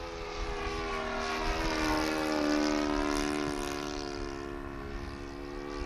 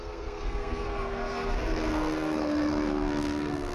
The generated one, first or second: second